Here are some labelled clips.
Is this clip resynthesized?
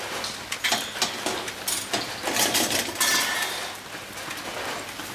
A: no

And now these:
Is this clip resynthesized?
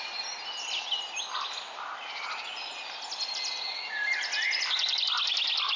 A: no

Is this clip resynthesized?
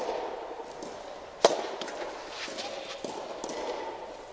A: no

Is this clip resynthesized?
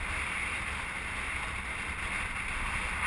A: no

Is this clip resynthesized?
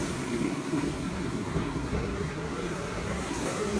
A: yes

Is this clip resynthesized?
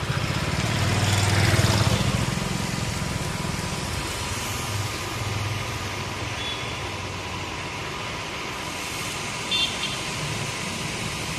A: no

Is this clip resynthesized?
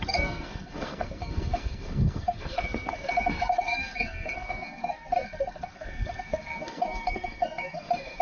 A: yes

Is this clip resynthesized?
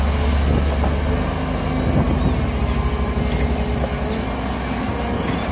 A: no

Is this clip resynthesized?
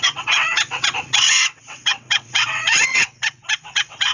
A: yes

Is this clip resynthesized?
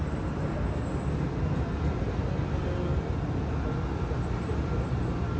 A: no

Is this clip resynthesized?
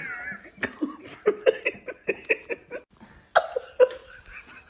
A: no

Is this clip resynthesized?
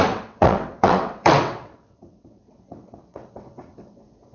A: yes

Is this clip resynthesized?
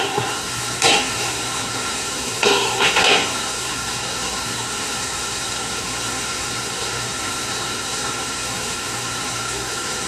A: yes